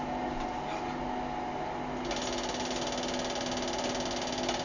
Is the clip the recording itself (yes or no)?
yes